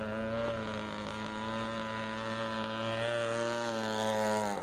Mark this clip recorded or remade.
recorded